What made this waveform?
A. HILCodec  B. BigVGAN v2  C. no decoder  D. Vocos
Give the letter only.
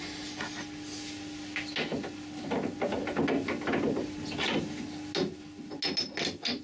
C